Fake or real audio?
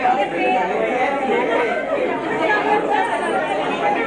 real